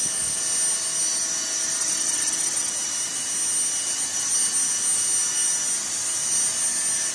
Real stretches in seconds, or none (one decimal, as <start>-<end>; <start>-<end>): 0.0-1.8; 2.7-7.1